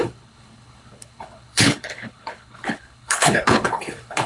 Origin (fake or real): fake